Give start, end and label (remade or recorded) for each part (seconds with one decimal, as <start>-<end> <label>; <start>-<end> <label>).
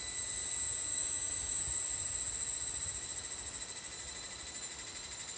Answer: 0.0-0.9 recorded; 0.9-1.6 remade; 1.6-5.4 recorded